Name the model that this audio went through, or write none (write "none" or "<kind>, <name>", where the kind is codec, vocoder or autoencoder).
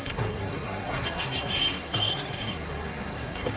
codec, SNAC